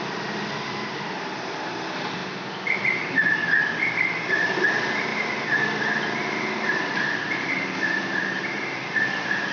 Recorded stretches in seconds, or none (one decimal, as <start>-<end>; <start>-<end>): 2.2-3.6